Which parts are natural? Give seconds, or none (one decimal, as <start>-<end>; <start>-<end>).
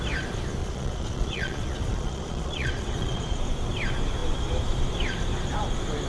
0.0-0.6; 3.4-6.1